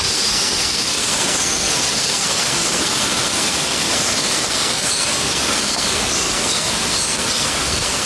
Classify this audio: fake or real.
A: fake